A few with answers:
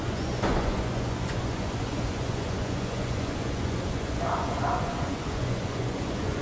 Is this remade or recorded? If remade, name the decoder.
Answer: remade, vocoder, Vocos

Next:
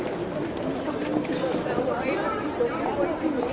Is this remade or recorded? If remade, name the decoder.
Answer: recorded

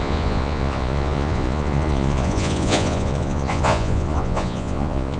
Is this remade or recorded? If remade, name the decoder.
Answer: remade, vocoder, Vocos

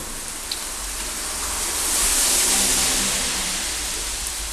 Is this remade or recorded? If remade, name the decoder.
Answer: recorded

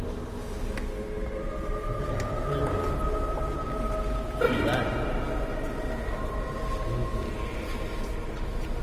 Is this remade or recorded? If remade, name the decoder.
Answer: recorded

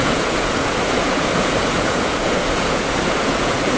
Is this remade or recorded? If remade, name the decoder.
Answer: remade, vocoder, Vocos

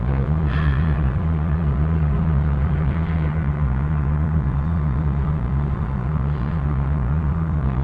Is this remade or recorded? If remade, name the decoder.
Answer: remade, vocoder, Vocos